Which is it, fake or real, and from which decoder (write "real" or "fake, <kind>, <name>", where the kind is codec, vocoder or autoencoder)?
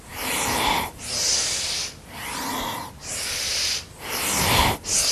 real